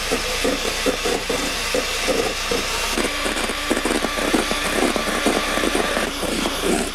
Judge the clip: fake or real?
fake